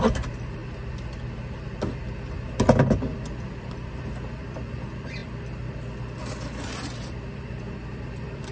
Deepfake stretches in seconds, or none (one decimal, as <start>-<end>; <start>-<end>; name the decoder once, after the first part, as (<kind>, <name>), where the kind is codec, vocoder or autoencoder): 0.0-0.6 (vocoder, BigVGAN v2); 3.6-8.5